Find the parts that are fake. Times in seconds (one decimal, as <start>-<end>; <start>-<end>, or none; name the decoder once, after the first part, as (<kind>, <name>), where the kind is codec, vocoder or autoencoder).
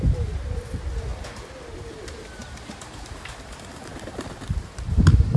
2.4-3.9 (vocoder, BigVGAN v2)